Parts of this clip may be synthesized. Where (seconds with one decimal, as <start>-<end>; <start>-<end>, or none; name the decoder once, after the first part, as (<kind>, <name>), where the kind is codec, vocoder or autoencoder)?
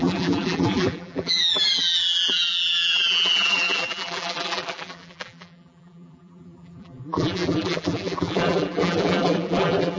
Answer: 0.0-10.0 (vocoder, BigVGAN v2)